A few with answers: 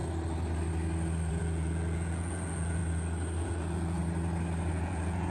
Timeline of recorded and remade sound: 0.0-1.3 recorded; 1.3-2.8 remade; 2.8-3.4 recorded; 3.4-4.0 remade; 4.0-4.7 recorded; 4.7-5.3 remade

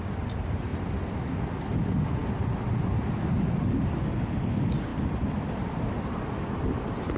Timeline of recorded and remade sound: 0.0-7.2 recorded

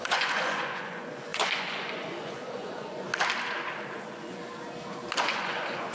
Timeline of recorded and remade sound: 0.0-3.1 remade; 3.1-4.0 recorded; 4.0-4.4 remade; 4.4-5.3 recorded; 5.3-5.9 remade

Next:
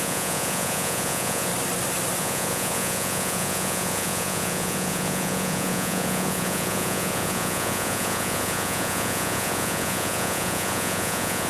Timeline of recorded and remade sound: 0.0-1.5 remade; 1.5-2.2 recorded; 2.2-11.5 remade

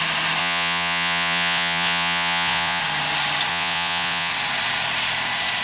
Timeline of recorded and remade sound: 0.0-0.4 recorded; 0.4-2.8 remade; 2.8-3.5 recorded; 3.5-4.3 remade; 4.3-5.6 recorded

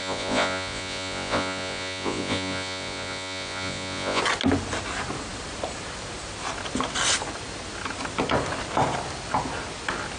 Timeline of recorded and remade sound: 0.0-4.2 remade; 4.2-10.2 recorded

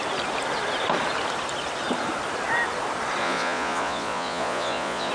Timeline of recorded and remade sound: 0.0-3.2 recorded; 3.2-5.1 remade